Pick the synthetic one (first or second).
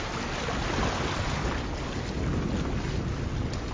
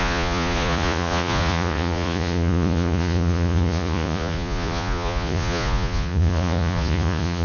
second